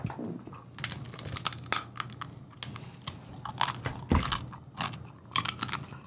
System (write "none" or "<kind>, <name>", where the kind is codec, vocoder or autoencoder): none